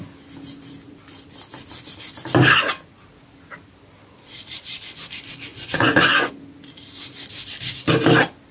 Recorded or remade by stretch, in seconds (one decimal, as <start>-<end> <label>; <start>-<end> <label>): 0.0-5.5 recorded; 5.5-6.3 remade; 6.3-8.5 recorded